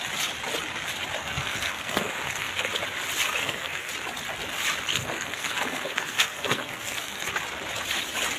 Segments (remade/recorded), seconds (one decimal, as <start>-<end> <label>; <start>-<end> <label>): 0.0-1.2 recorded; 1.2-2.7 remade; 2.7-3.4 recorded; 3.4-3.9 remade; 3.9-4.9 recorded; 4.9-7.3 remade; 7.3-8.4 recorded